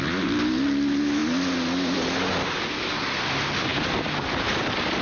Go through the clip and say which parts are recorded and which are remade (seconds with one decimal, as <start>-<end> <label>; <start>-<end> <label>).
0.0-5.0 recorded